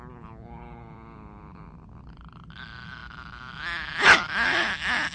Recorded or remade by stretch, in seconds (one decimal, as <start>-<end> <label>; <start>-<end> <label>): 0.0-5.1 recorded